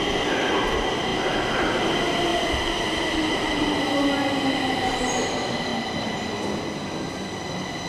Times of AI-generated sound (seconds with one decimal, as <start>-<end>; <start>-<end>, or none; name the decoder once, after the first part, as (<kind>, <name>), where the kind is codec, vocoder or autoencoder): 2.3-3.9 (vocoder, BigVGAN v2); 5.7-6.3